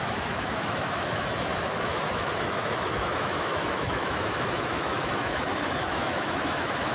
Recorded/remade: remade